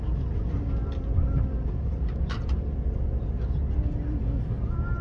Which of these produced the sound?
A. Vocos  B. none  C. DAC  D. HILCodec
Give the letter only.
B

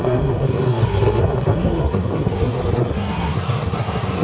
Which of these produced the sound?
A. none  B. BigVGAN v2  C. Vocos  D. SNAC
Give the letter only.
D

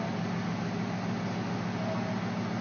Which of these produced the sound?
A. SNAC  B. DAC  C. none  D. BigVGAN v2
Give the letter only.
C